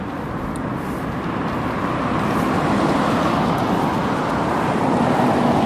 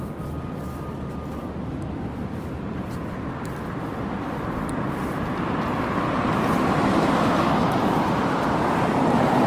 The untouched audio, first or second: first